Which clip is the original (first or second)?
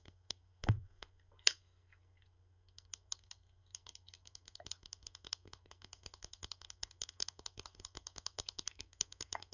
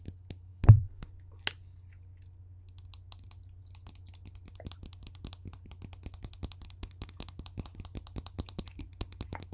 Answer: second